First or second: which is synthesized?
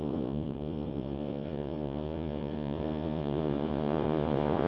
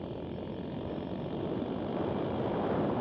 first